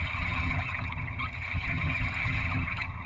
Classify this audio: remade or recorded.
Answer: remade